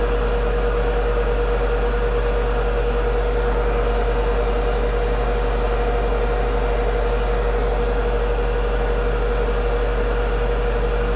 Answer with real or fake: real